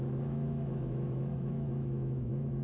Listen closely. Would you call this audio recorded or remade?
remade